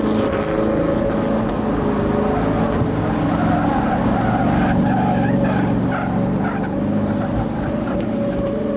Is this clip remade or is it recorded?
recorded